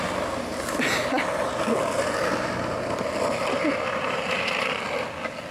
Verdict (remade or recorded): recorded